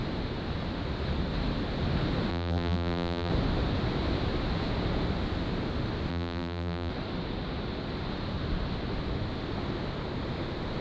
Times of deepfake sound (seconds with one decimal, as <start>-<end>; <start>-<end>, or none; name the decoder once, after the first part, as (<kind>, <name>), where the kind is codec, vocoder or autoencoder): 2.3-3.3 (vocoder, BigVGAN v2); 6.1-6.9